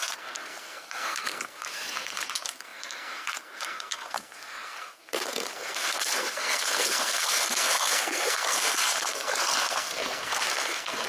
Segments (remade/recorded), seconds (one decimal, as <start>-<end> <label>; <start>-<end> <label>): 0.0-11.1 remade